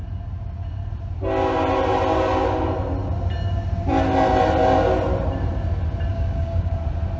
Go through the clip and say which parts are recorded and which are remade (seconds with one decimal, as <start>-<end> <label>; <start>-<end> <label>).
0.0-6.1 recorded; 6.1-6.8 remade; 6.8-7.2 recorded